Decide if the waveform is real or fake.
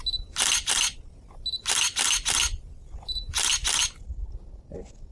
real